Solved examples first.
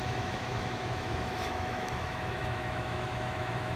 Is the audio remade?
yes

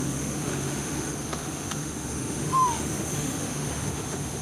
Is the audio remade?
yes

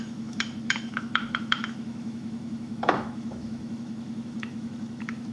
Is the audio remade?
yes